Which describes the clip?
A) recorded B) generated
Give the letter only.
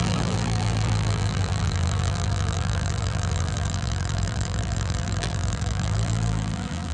B